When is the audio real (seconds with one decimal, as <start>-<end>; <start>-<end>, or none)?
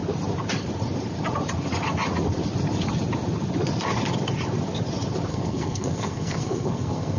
0.0-5.3